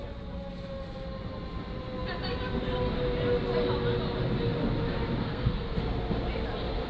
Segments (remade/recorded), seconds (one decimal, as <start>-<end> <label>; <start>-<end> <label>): 0.0-5.3 recorded; 5.3-5.8 remade; 5.8-6.9 recorded